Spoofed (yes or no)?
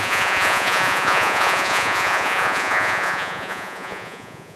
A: yes